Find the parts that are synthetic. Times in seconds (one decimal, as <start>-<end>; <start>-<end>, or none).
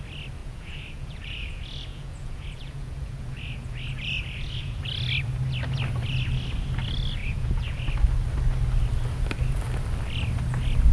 0.4-4.8; 7.2-7.9